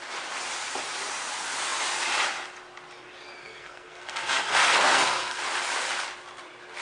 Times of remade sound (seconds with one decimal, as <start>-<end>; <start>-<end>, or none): 3.4-5.4